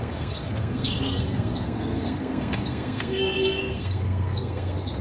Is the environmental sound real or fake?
fake